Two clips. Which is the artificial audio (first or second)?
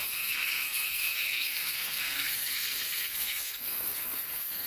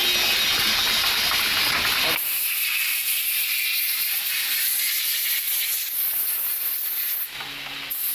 first